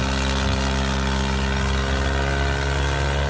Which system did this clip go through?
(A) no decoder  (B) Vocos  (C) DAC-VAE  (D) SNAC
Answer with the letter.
A